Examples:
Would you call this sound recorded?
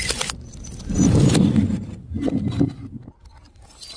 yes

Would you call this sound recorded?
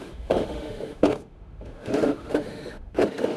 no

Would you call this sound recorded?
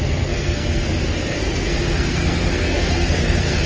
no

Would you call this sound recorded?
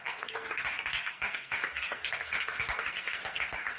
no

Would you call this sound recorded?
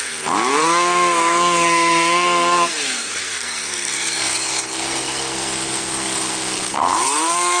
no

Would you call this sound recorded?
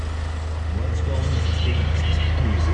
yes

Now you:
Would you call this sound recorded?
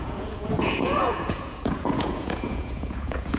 no